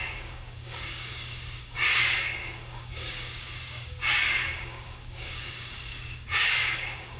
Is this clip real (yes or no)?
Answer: no